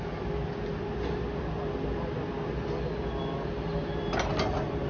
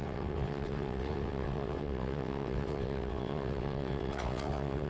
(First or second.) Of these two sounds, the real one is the first